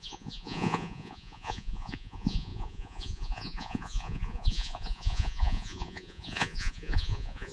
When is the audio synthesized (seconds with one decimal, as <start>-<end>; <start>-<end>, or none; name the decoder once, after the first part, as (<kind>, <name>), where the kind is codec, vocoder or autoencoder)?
0.0-7.5 (vocoder, Vocos)